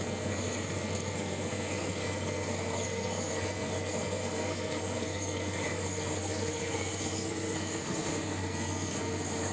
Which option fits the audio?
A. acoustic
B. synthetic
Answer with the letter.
B